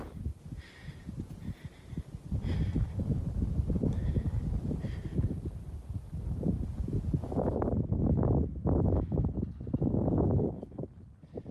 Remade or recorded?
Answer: recorded